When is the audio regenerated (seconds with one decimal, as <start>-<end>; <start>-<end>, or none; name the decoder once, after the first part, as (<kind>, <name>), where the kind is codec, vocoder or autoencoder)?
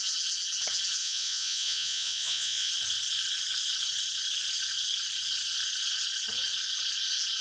1.0-2.7 (vocoder, Vocos)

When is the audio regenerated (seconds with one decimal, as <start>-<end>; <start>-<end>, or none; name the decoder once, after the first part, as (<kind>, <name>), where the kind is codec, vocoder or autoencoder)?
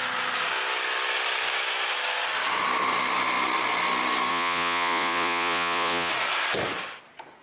4.3-6.1 (vocoder, Vocos)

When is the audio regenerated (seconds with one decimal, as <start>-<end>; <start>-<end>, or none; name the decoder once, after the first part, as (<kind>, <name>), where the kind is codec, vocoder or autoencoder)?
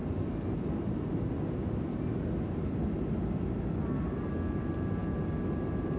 none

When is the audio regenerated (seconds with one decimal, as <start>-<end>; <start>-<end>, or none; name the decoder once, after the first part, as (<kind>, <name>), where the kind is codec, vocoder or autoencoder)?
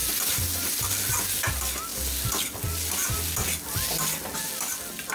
none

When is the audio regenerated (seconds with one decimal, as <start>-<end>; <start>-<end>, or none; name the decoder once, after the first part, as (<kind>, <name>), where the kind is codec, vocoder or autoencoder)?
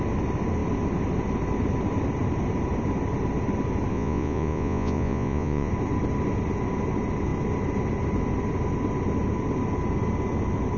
3.9-5.7 (vocoder, Vocos)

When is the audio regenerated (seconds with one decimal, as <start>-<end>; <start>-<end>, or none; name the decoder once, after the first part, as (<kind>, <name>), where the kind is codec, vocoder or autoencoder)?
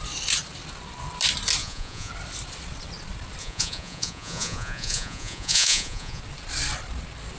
1.6-2.1 (vocoder, Vocos); 3.4-6.2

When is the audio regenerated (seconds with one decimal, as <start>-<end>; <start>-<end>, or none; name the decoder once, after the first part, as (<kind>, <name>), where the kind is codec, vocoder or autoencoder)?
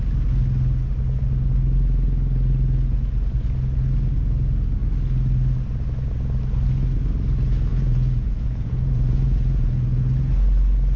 7.7-10.0 (vocoder, Vocos)